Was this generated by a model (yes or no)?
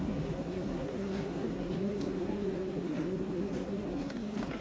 yes